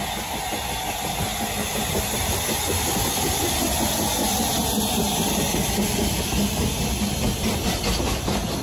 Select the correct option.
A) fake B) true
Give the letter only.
B